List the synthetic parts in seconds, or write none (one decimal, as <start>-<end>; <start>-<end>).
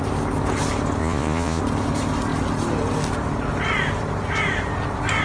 1.0-1.6